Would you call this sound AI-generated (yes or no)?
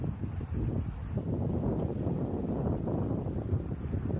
no